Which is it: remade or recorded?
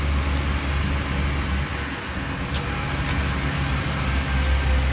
recorded